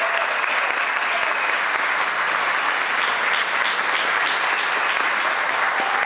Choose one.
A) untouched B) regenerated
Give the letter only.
A